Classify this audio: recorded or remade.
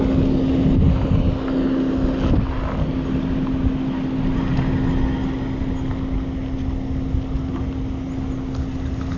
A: recorded